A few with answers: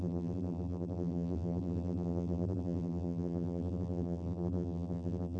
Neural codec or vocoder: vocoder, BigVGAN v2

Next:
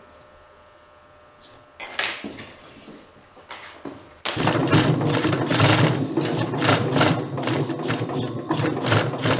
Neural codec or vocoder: none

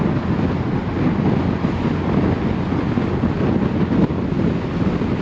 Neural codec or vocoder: none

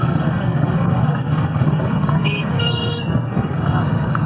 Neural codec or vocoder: codec, SNAC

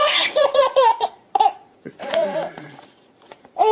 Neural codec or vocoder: vocoder, Vocos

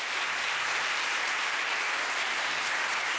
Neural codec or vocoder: vocoder, BigVGAN v2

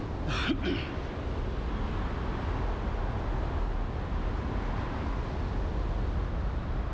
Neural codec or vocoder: none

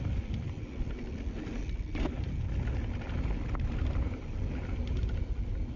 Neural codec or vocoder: none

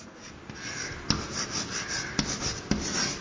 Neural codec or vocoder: none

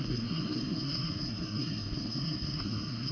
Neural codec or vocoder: codec, SNAC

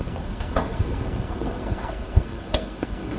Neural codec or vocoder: codec, SNAC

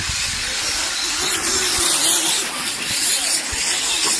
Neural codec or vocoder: none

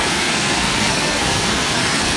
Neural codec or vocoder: codec, SNAC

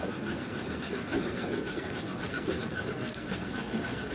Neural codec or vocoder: codec, SNAC